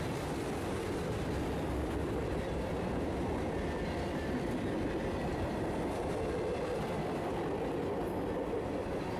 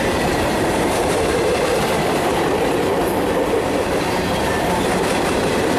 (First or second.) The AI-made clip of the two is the second